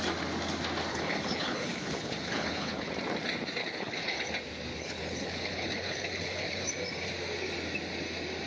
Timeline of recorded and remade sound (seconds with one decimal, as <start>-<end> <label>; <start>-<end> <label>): 0.0-0.9 recorded; 0.9-2.9 remade; 2.9-3.6 recorded; 3.6-4.3 remade; 4.3-4.7 recorded; 4.7-6.7 remade; 6.7-8.5 recorded